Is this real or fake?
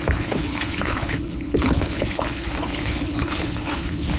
fake